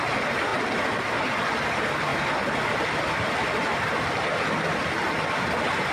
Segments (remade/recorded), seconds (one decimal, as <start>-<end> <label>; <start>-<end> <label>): 0.0-5.9 recorded